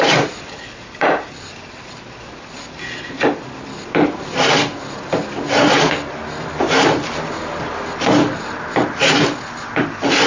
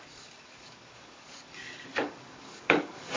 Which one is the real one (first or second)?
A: first